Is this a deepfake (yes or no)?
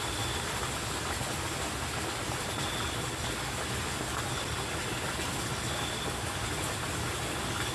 no